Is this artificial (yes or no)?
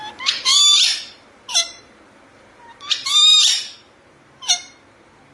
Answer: yes